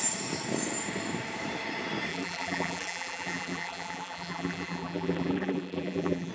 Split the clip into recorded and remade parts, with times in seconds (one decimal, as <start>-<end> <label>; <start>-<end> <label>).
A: 0.0-2.1 recorded; 2.1-6.3 remade